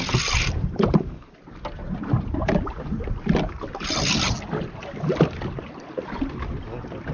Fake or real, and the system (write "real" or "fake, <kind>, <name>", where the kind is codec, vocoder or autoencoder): real